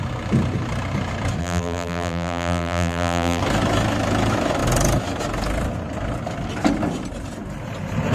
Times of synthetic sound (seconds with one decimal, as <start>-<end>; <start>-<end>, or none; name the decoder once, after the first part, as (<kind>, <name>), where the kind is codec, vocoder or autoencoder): 1.4-3.4 (vocoder, BigVGAN v2)